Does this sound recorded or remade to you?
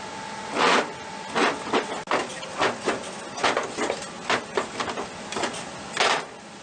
recorded